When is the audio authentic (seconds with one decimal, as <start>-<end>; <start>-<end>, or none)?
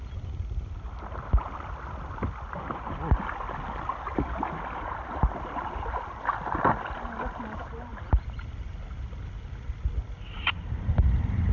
0.0-11.5